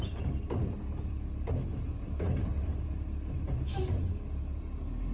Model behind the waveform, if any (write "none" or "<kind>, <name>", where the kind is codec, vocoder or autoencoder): none